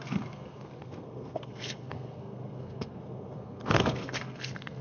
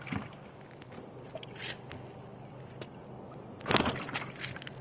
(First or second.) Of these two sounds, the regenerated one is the first